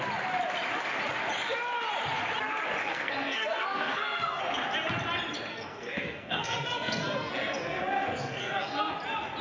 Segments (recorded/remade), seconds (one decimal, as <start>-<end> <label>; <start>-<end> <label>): 0.0-2.8 recorded; 2.8-4.4 remade; 4.4-5.5 recorded; 5.5-8.9 remade; 8.9-9.4 recorded